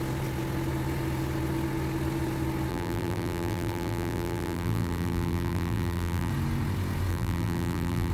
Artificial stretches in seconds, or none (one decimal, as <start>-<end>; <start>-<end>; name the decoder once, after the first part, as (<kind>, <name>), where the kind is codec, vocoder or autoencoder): 2.7-6.3 (vocoder, BigVGAN v2); 7.1-8.1